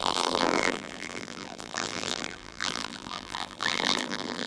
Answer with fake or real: fake